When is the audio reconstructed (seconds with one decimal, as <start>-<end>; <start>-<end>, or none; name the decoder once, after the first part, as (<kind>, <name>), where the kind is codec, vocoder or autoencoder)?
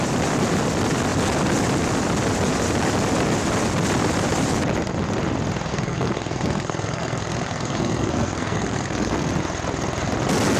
5.7-9.3 (codec, SNAC)